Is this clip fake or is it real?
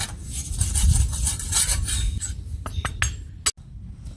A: real